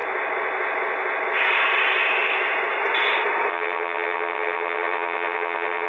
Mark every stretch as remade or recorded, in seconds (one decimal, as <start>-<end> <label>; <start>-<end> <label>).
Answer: 0.0-3.5 recorded; 3.5-5.9 remade